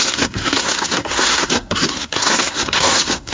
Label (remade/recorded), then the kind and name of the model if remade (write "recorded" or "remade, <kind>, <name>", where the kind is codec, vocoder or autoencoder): remade, codec, SNAC